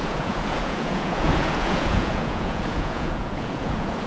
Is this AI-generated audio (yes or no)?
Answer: yes